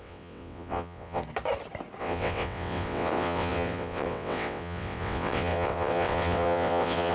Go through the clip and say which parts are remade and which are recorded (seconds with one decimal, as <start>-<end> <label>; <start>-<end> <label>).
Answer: 0.0-1.2 remade; 1.2-2.0 recorded; 2.0-7.1 remade